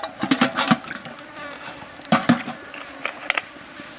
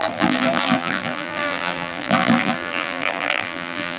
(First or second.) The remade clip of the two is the second